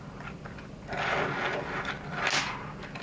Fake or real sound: real